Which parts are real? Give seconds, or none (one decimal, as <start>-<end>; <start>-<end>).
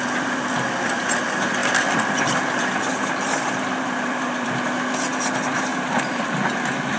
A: 0.0-1.6; 4.5-5.7; 6.3-7.0